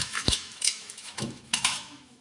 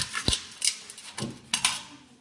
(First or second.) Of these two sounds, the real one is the second